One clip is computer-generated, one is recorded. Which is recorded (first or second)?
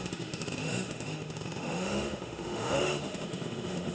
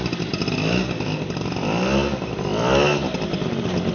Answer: second